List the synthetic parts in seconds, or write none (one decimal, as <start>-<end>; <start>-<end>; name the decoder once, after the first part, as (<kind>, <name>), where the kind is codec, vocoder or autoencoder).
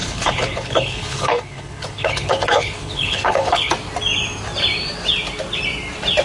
0.0-3.7 (codec, HILCodec)